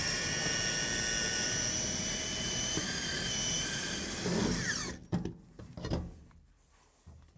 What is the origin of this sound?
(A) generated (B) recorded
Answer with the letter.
B